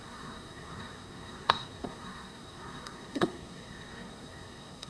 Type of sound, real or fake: fake